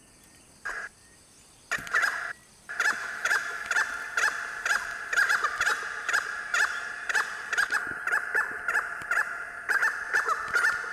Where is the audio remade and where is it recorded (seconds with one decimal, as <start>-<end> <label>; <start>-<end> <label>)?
0.0-3.0 recorded; 3.0-3.7 remade; 3.7-10.9 recorded